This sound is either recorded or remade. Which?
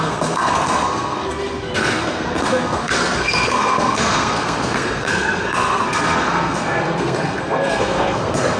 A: remade